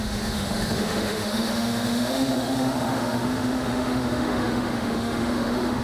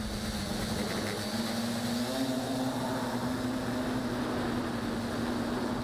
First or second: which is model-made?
first